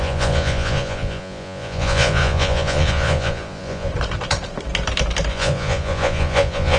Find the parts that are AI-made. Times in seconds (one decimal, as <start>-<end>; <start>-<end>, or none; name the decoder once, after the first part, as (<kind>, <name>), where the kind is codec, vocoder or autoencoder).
0.0-3.9 (vocoder, Vocos); 5.3-6.8